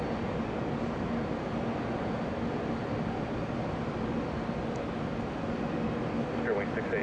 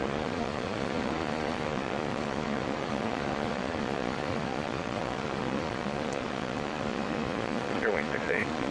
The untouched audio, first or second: first